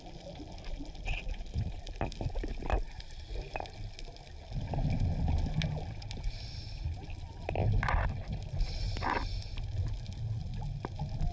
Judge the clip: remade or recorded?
recorded